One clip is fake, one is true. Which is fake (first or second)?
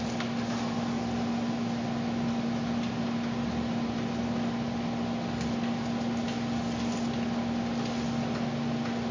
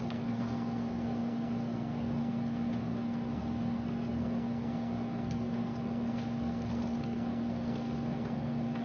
second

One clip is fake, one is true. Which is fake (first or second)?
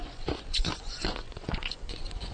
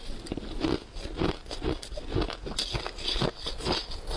first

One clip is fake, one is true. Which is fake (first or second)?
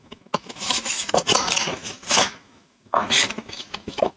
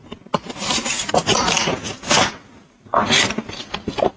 first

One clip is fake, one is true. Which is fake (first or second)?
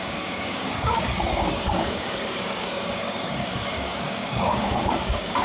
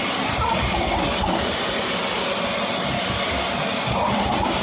first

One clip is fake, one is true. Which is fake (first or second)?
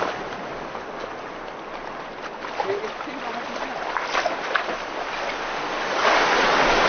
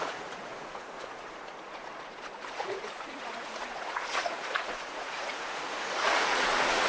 second